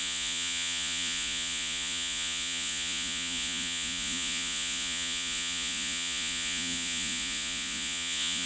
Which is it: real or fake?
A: fake